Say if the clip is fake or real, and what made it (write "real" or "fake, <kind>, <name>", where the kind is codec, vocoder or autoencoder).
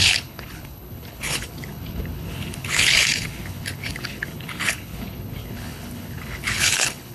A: fake, codec, HILCodec